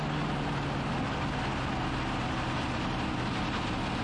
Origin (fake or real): real